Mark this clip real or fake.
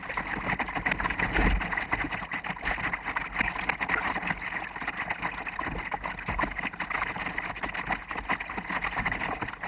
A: real